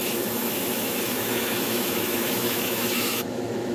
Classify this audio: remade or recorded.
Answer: remade